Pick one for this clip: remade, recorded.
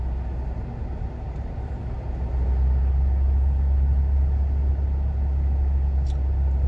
recorded